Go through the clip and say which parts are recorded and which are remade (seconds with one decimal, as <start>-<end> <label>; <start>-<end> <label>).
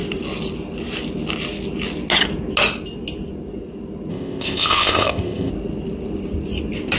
0.0-4.1 recorded; 4.1-5.5 remade; 5.5-7.0 recorded